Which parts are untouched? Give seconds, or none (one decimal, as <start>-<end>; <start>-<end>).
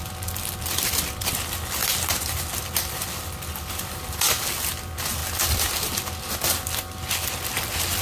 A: 0.0-8.0